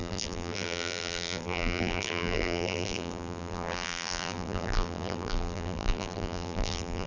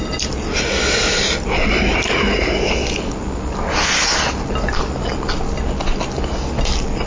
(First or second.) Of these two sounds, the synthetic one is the first